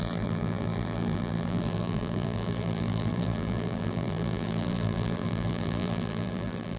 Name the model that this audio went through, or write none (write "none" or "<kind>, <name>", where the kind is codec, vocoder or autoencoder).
vocoder, BigVGAN v2